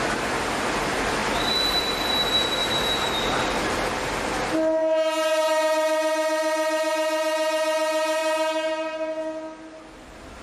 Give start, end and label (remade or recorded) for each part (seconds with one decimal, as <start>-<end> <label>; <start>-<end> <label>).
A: 0.0-2.6 recorded; 2.6-3.6 remade; 3.6-8.2 recorded; 8.2-8.7 remade; 8.7-10.4 recorded